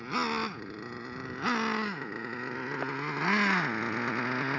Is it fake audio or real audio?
real